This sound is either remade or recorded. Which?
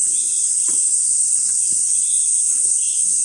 remade